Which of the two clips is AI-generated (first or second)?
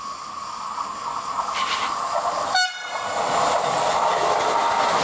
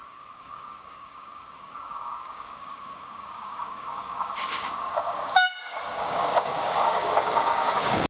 second